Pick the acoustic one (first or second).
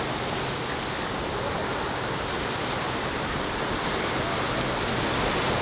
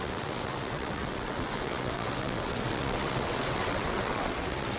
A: first